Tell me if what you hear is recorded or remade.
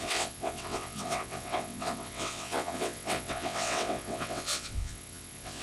remade